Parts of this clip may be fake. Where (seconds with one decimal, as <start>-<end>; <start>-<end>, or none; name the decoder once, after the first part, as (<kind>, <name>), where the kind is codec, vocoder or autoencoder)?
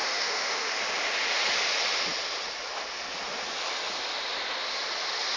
0.0-0.7 (autoencoder, DAC-VAE)